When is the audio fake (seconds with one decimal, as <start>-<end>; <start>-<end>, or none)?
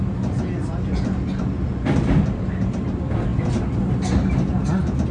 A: none